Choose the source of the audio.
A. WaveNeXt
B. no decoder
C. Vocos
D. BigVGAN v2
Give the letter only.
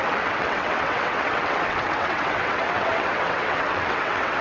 A